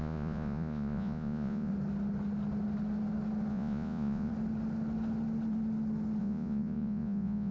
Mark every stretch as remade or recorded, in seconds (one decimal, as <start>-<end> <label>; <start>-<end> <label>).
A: 0.0-1.7 remade; 1.7-3.5 recorded; 3.5-4.3 remade; 4.3-6.2 recorded; 6.2-7.5 remade

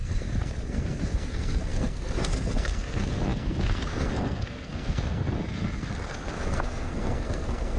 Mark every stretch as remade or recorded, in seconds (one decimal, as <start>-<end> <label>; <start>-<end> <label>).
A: 0.0-7.8 remade

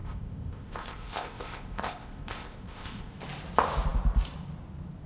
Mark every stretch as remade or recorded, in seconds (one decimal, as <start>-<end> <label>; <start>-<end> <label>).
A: 0.0-3.1 remade; 3.1-5.1 recorded

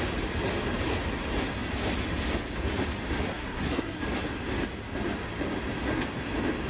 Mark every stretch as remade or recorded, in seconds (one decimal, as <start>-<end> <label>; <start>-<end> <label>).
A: 0.0-3.3 recorded; 3.3-4.0 remade; 4.0-6.7 recorded

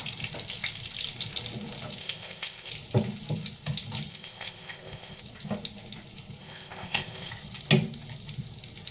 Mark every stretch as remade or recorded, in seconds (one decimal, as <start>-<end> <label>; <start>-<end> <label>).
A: 0.0-2.0 recorded; 2.0-2.7 remade; 2.7-4.1 recorded; 4.1-5.2 remade; 5.2-6.4 recorded; 6.4-7.3 remade; 7.3-8.9 recorded

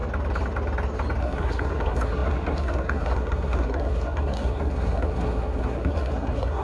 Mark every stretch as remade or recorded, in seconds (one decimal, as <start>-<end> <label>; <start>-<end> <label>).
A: 0.0-1.2 recorded; 1.2-6.6 remade